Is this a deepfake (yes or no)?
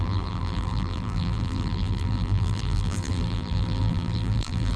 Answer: yes